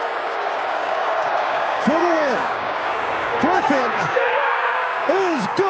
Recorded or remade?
remade